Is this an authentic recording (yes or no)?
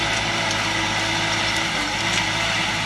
yes